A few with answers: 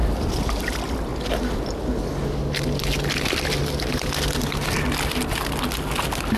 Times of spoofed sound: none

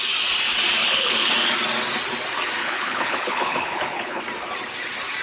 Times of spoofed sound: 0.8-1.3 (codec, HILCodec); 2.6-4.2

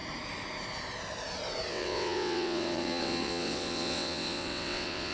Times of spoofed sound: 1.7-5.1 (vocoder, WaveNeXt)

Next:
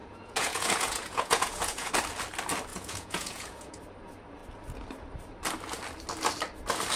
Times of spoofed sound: 0.0-1.9 (vocoder, Vocos); 2.7-3.8

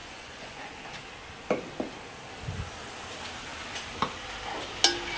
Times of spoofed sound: 0.0-0.7 (vocoder, Vocos)

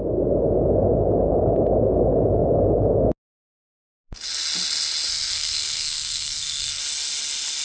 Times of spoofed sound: 5.1-6.8 (codec, SNAC)

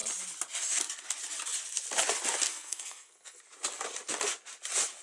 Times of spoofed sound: 2.5-3.4 (codec, SNAC)

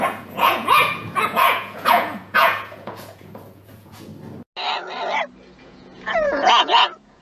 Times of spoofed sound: 0.0-4.1 (vocoder, Vocos); 5.6-7.2